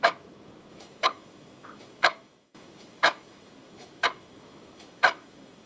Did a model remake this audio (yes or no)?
yes